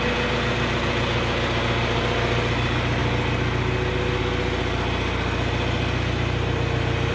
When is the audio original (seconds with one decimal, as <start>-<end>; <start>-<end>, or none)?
0.0-7.1